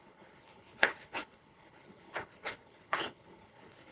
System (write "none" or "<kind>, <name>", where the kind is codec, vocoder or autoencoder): codec, HILCodec